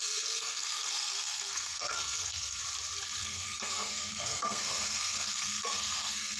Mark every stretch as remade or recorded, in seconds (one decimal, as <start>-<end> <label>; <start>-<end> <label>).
0.0-2.6 remade; 2.6-3.2 recorded; 3.2-6.4 remade